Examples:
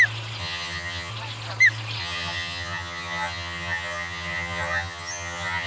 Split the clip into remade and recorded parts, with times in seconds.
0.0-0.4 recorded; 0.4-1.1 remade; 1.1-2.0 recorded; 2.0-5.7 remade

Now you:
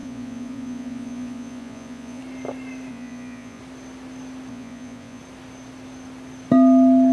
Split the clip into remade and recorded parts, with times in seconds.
0.0-2.2 remade; 2.2-2.9 recorded; 2.9-3.6 remade; 3.6-4.5 recorded; 4.5-5.2 remade; 5.2-7.1 recorded